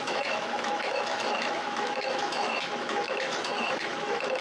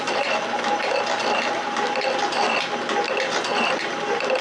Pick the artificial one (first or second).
first